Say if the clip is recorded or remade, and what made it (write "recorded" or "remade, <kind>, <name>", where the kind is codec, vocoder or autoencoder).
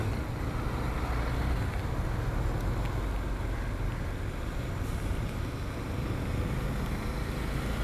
recorded